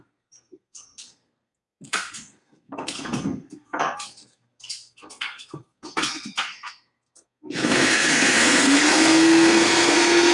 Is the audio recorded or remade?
remade